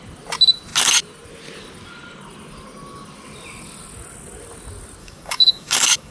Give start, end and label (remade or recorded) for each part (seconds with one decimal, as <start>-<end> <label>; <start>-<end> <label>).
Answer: 0.0-5.0 recorded; 5.0-6.1 remade